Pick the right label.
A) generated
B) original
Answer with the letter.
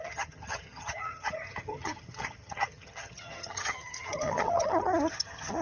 A